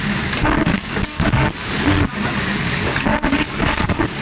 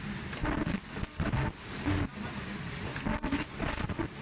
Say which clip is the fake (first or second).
first